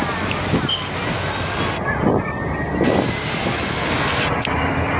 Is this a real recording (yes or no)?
yes